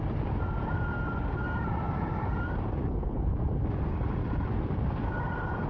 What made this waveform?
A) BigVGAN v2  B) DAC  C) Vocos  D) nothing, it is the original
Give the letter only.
D